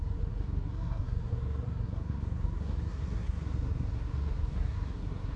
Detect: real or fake fake